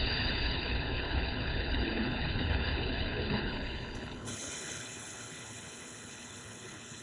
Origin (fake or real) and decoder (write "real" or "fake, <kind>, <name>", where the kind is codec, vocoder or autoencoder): fake, codec, HILCodec